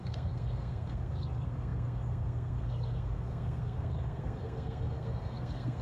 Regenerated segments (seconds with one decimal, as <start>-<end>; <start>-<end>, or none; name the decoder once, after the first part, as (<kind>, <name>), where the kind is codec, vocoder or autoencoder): 0.0-5.8 (codec, SNAC)